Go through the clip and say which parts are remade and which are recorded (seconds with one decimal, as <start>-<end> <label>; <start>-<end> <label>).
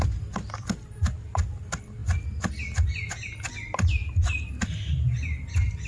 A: 0.0-5.9 recorded